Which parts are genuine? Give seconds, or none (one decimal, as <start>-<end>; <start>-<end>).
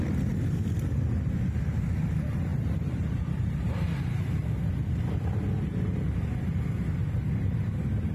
0.0-2.5; 4.2-8.1